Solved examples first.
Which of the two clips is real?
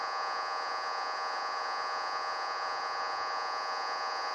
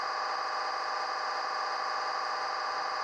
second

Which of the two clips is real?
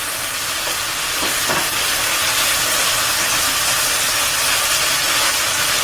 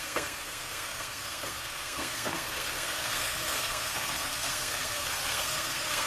first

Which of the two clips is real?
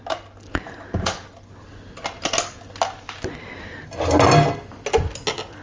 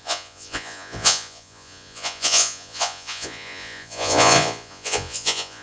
first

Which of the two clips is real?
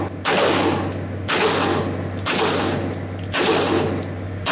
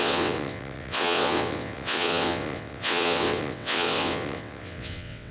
first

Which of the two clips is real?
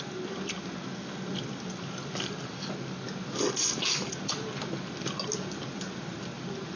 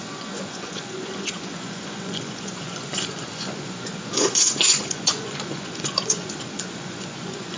first